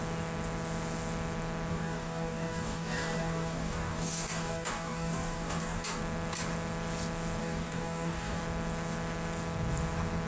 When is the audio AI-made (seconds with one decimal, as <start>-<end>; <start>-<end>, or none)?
1.7-6.0; 7.4-8.4